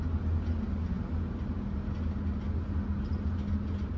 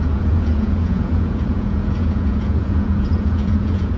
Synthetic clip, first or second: second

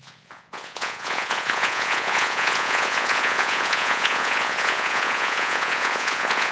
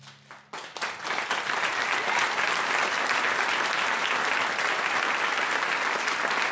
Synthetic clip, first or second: first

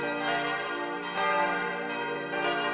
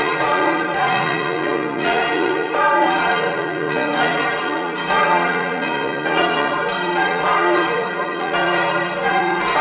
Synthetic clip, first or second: second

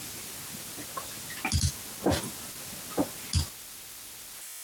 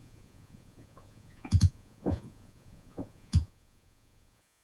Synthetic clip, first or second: second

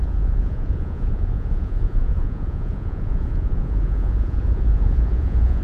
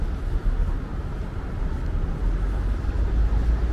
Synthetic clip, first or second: first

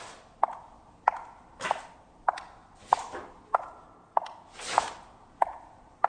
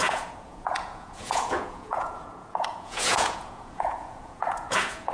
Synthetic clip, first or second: second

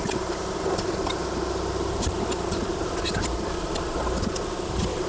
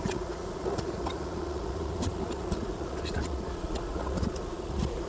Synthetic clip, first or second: second